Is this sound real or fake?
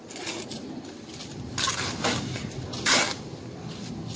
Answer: real